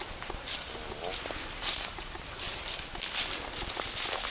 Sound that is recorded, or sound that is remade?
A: recorded